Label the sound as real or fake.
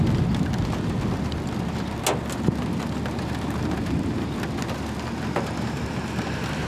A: real